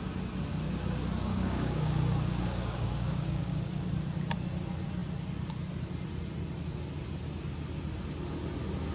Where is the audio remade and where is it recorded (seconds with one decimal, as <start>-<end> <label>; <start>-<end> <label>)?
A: 0.0-1.3 recorded; 1.3-3.9 remade; 3.9-8.9 recorded